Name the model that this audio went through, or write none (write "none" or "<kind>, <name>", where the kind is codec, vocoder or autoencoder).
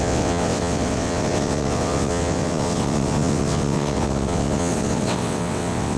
vocoder, WaveNeXt